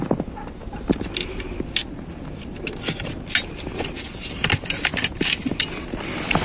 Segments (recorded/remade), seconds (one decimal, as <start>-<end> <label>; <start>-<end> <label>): 0.0-6.4 recorded